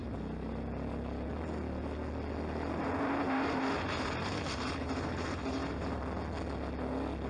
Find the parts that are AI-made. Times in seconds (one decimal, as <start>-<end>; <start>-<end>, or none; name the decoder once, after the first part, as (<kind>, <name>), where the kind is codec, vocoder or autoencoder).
2.8-6.0 (vocoder, BigVGAN v2)